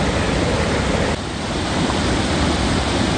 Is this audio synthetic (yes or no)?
no